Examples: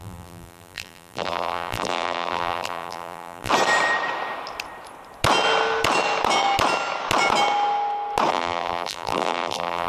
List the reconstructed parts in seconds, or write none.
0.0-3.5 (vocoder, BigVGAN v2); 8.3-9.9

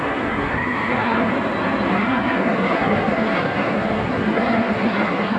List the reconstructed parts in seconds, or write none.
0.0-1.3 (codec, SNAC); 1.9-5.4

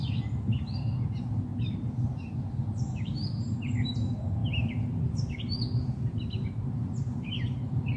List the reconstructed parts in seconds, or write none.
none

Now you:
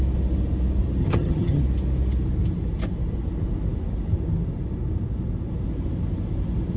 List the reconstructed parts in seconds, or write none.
1.0-1.6 (vocoder, HiFi-GAN)

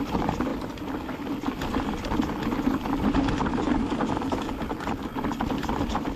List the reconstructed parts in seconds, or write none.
0.0-0.5 (vocoder, BigVGAN v2); 3.0-3.9